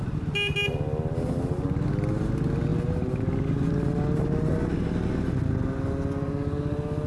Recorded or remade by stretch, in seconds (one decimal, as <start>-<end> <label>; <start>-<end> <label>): 0.0-7.1 recorded